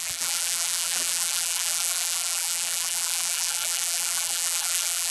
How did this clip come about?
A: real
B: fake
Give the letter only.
B